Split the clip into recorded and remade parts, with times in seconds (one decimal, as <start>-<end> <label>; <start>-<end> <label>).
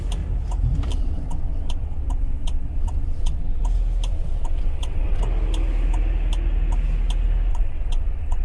0.0-0.9 recorded; 0.9-3.6 remade; 3.6-4.1 recorded; 4.1-5.2 remade; 5.2-7.5 recorded; 7.5-8.4 remade